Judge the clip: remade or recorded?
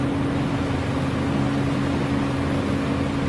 recorded